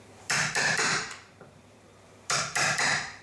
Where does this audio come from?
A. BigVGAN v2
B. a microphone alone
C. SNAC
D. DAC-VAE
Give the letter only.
A